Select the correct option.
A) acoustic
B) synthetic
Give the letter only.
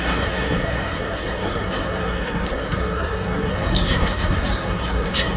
B